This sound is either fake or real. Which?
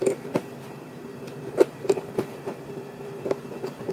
fake